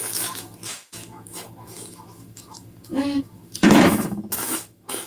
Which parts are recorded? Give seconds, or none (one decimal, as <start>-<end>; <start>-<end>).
none